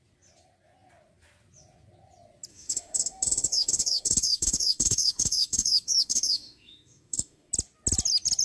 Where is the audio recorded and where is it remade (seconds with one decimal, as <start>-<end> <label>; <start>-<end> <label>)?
0.0-2.5 recorded; 2.5-7.5 remade; 7.5-8.4 recorded